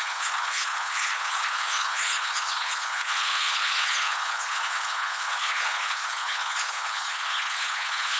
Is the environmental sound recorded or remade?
remade